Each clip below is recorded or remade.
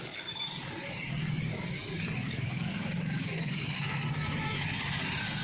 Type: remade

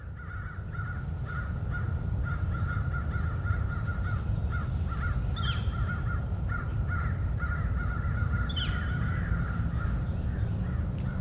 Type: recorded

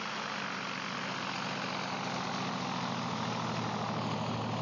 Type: recorded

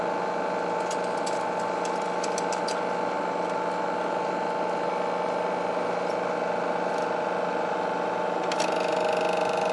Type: recorded